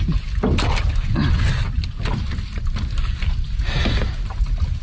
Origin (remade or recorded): recorded